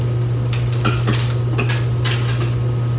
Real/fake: real